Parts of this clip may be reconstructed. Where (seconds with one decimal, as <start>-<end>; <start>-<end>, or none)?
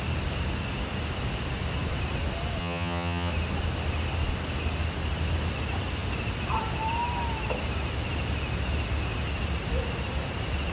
2.6-3.3